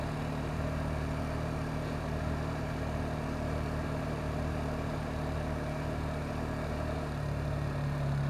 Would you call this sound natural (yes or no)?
no